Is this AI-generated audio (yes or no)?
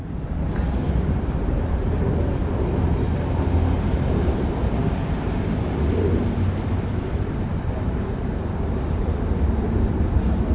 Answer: no